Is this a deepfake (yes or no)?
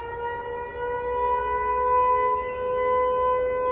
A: no